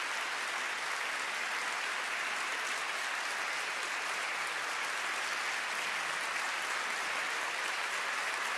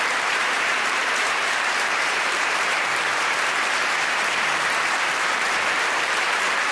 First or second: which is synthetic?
second